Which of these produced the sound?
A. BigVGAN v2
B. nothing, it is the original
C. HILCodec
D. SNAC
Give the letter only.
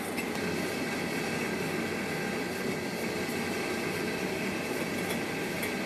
B